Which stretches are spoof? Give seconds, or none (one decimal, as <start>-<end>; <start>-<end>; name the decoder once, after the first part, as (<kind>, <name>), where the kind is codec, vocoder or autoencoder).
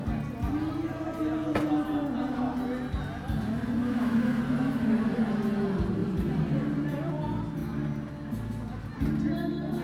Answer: 3.8-4.4 (autoencoder, DAC-VAE)